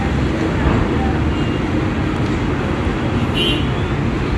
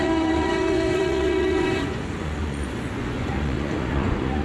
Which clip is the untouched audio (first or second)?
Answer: first